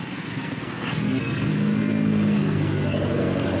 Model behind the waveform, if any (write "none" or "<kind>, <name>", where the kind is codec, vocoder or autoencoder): codec, SNAC